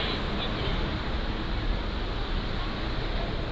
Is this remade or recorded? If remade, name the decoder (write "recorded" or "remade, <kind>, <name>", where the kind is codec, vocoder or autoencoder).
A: recorded